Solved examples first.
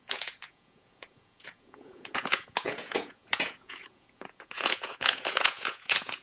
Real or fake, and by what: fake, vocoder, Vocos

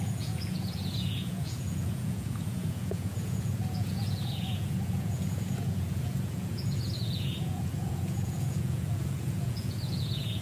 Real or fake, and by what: fake, vocoder, Vocos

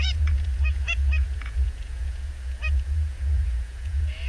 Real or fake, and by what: fake, vocoder, Vocos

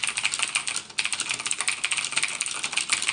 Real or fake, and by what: real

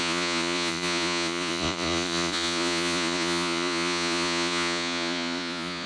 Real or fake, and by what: fake, vocoder, Vocos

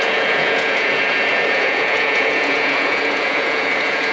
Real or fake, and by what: fake, vocoder, Vocos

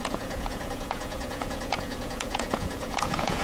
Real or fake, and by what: fake, vocoder, Vocos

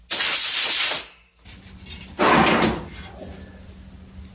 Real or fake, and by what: real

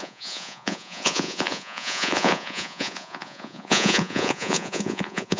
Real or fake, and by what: fake, vocoder, Vocos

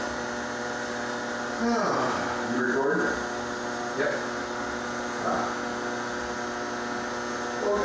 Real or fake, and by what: real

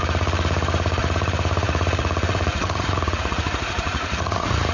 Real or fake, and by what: fake, vocoder, Vocos